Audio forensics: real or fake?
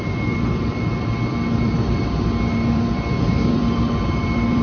fake